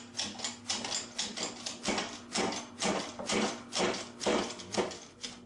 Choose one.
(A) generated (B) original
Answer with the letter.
B